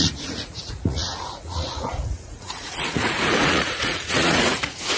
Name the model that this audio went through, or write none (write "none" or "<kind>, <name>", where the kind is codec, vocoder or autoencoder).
vocoder, Vocos